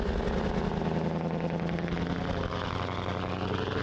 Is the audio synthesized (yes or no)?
no